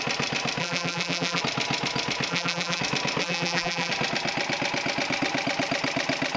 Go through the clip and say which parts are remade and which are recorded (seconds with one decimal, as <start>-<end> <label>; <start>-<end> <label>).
0.0-0.6 recorded; 0.6-1.4 remade; 1.4-2.3 recorded; 2.3-2.8 remade; 2.8-3.2 recorded; 3.2-3.9 remade; 3.9-6.4 recorded